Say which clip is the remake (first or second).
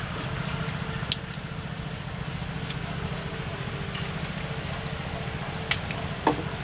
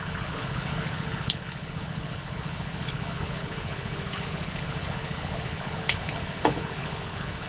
second